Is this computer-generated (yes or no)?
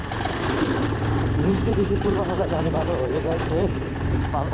yes